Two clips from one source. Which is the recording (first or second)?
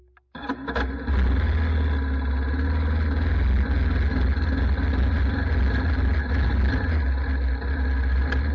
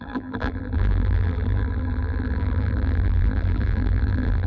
first